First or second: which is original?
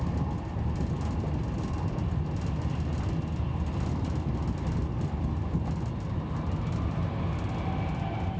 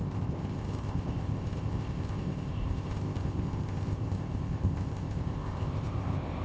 first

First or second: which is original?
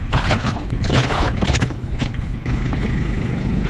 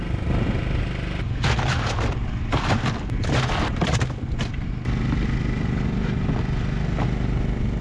second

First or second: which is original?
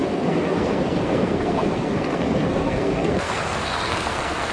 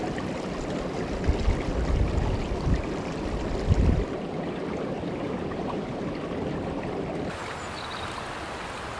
second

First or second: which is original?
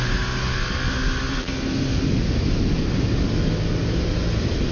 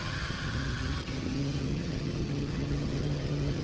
first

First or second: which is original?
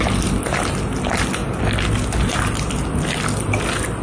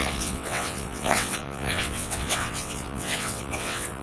first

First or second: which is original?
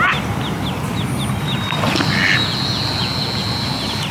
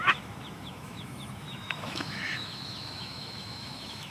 first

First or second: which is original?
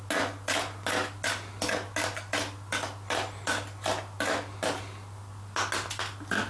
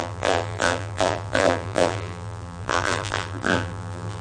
first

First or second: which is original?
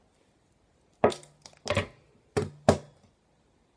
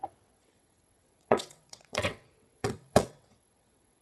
first